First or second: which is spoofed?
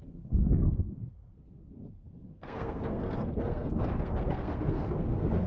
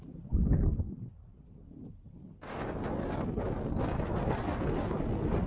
first